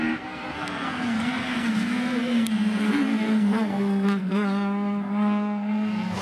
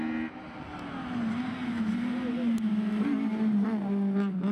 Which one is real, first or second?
second